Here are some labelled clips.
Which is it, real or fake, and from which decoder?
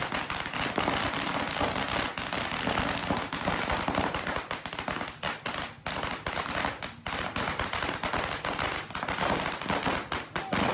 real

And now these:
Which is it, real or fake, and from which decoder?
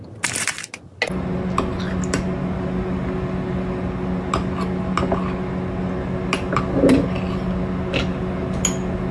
real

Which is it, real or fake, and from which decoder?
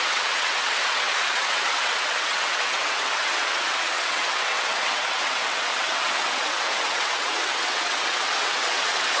fake, vocoder, WaveNeXt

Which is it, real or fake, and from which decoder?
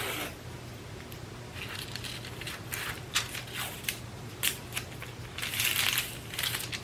real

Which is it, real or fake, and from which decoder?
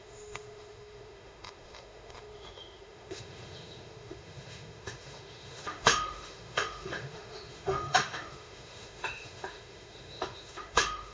fake, autoencoder, DAC-VAE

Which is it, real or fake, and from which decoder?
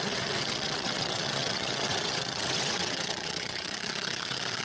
fake, vocoder, WaveNeXt